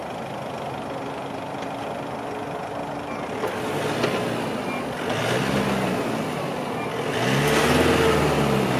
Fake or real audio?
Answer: real